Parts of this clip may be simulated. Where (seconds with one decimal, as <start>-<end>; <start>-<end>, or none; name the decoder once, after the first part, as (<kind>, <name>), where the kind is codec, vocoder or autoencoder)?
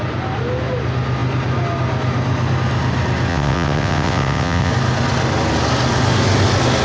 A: 3.3-4.7 (vocoder, WaveNeXt)